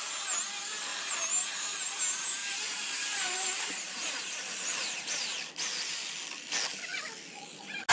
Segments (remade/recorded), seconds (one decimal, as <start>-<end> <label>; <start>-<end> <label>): 0.0-2.4 recorded; 2.4-5.5 remade; 5.5-7.9 recorded